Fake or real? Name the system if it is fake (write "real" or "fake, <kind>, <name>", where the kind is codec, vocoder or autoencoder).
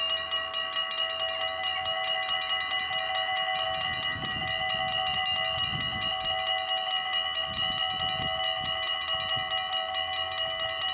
real